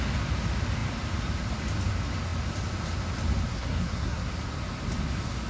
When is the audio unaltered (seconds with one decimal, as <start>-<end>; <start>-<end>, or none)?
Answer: 0.0-3.5; 4.3-5.5